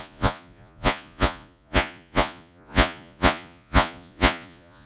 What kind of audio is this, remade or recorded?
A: remade